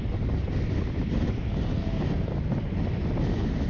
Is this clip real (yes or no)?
yes